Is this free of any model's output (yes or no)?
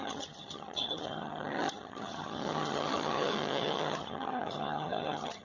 no